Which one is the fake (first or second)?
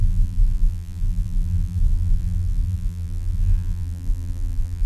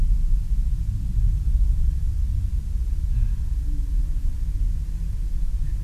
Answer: first